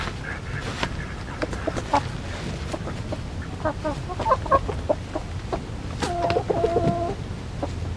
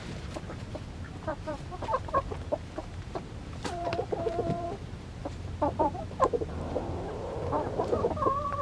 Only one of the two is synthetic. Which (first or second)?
second